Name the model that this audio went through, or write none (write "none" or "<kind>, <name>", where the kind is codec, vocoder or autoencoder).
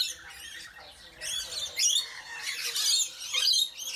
none